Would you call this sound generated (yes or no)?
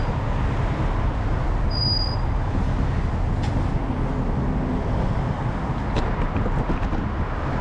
no